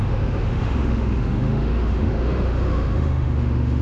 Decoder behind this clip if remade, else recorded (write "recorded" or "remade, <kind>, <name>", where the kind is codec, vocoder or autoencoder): remade, autoencoder, DAC-VAE